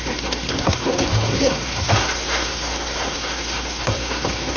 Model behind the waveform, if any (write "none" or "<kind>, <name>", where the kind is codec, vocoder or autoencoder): codec, SNAC